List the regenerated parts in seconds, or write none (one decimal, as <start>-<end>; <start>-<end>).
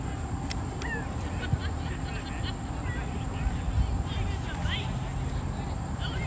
none